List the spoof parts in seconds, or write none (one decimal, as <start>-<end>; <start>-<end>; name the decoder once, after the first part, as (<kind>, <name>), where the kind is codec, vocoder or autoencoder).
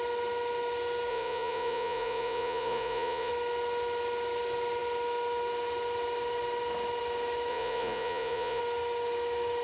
1.1-3.3 (vocoder, Vocos); 7.5-8.6